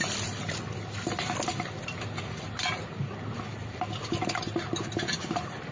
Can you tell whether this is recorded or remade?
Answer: recorded